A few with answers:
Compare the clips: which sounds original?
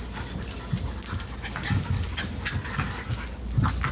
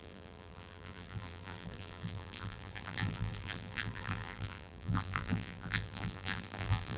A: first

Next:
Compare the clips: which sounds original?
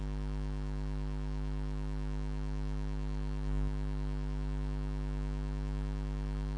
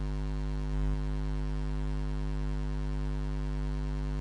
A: second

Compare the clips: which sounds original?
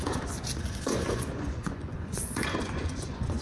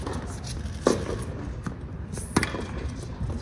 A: second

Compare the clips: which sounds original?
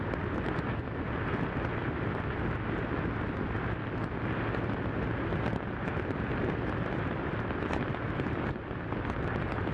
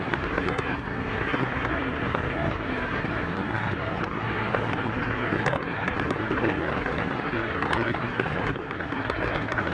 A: first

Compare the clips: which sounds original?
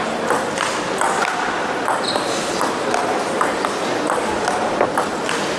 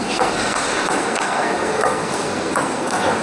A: first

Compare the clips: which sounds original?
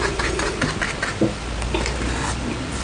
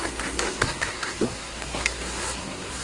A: first